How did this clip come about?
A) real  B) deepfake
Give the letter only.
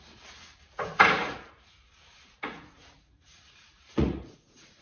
B